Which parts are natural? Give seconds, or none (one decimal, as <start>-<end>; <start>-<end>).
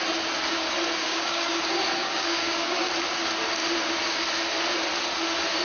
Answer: 0.0-1.0; 1.6-2.0; 2.9-5.6